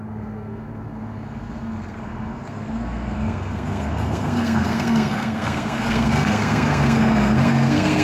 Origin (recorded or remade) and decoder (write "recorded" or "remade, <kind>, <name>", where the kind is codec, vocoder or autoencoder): remade, codec, SNAC